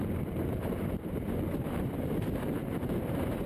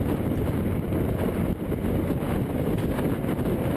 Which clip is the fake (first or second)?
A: first